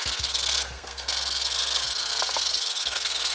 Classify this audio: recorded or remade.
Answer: remade